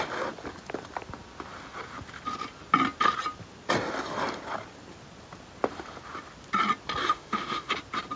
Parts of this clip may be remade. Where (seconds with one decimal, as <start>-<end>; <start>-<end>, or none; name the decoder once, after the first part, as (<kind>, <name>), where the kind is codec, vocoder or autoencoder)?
7.0-7.7 (autoencoder, DAC-VAE)

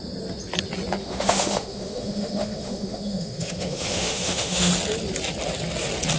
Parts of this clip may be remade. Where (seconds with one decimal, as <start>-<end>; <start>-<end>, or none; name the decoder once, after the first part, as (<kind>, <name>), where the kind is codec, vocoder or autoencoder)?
1.0-4.7 (autoencoder, DAC-VAE)

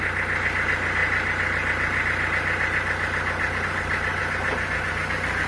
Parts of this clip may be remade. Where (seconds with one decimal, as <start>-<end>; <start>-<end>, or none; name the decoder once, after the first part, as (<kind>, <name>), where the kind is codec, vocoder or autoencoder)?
none

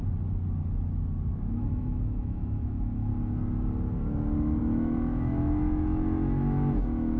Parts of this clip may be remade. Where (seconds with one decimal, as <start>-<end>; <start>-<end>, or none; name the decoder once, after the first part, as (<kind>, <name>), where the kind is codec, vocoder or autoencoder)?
1.3-3.1 (autoencoder, DAC-VAE); 4.6-7.2

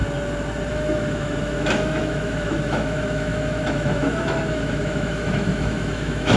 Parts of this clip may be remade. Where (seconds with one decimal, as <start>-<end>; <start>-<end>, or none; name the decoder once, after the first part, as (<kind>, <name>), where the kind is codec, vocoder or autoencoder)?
0.7-6.4 (autoencoder, DAC-VAE)

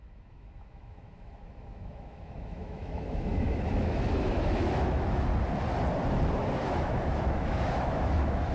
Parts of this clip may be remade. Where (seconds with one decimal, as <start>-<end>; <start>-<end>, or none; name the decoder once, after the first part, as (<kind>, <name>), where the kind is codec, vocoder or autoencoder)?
0.0-5.3 (autoencoder, DAC-VAE); 6.6-8.5

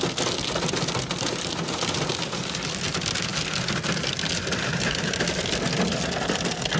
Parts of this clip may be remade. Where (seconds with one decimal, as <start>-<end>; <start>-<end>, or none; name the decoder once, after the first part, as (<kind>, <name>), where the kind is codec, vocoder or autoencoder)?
none

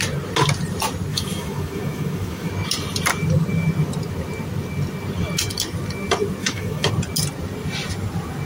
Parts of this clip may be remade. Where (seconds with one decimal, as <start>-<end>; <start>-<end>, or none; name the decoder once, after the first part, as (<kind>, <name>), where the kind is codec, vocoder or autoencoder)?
1.1-2.5 (autoencoder, DAC-VAE); 6.4-6.9